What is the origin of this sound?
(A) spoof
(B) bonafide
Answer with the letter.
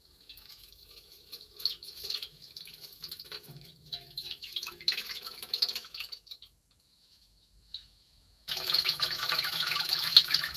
A